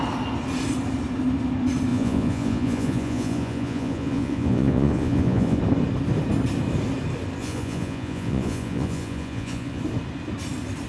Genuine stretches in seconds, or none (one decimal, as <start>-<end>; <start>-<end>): 0.0-1.9; 5.6-7.4; 9.8-10.9

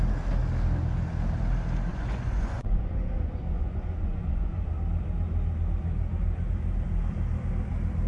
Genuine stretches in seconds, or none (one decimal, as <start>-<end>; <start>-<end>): 0.0-1.9; 4.7-8.1